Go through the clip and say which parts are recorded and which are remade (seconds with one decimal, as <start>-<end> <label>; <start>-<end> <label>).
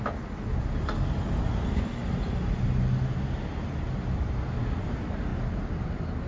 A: 0.0-6.3 recorded